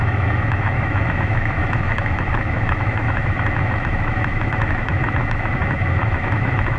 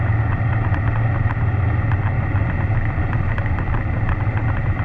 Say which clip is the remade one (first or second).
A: first